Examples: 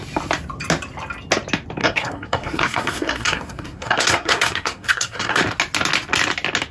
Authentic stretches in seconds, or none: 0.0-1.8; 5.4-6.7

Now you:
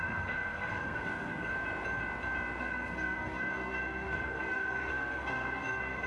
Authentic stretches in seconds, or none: 1.5-2.6